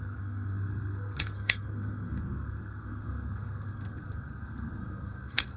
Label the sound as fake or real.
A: fake